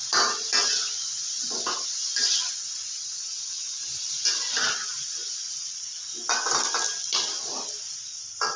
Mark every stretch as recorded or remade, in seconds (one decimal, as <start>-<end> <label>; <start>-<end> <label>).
0.0-8.6 recorded

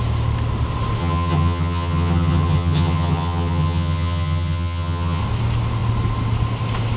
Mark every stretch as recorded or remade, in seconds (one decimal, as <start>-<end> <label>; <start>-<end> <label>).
0.0-1.0 recorded; 1.0-5.2 remade; 5.2-7.0 recorded

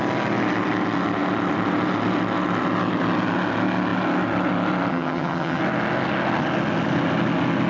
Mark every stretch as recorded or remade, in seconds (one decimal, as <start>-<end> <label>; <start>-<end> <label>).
0.0-4.9 recorded; 4.9-5.6 remade; 5.6-7.7 recorded

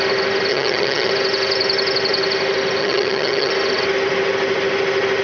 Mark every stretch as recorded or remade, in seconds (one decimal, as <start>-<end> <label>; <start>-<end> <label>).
0.0-0.5 recorded; 0.5-1.1 remade; 1.1-2.8 recorded; 2.8-3.5 remade; 3.5-5.2 recorded

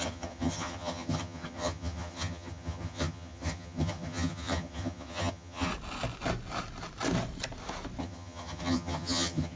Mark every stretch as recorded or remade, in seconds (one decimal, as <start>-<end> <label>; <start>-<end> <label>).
0.0-5.7 remade; 5.7-8.0 recorded; 8.0-9.6 remade

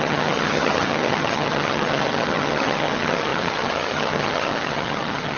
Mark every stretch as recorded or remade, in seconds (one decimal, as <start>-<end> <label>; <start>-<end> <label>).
0.0-5.4 remade

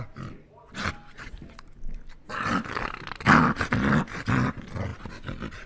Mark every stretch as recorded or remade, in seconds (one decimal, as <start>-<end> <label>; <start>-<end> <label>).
0.0-5.7 recorded

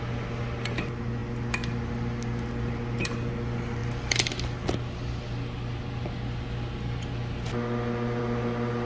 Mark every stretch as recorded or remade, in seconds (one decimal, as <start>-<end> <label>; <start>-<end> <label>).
0.0-8.9 recorded